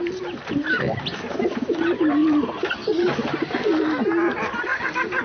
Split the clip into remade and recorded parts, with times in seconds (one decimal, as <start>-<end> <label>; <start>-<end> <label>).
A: 0.0-5.2 recorded